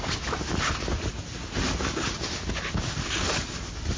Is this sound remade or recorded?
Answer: recorded